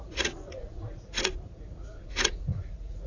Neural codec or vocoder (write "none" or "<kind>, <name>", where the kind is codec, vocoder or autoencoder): vocoder, Vocos